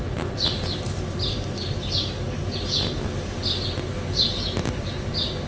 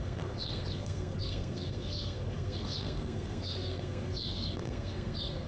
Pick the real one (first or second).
first